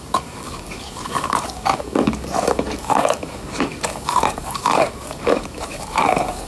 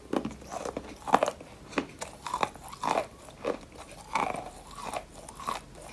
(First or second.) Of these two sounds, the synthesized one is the first